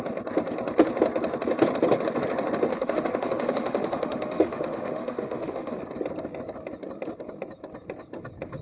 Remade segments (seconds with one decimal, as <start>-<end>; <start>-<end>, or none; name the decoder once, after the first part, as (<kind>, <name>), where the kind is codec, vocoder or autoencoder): 2.7-5.8 (autoencoder, DAC-VAE)